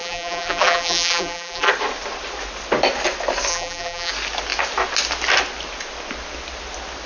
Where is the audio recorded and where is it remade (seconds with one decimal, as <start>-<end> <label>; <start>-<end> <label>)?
0.0-1.7 remade; 1.7-3.5 recorded; 3.5-4.1 remade; 4.1-7.1 recorded